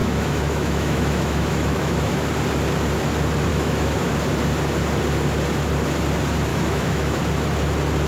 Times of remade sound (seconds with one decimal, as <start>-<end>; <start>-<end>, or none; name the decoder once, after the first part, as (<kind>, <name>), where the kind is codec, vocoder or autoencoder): 0.0-2.3 (autoencoder, DAC-VAE); 3.5-4.1; 6.5-7.2